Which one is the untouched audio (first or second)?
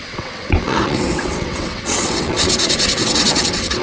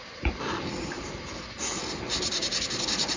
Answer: second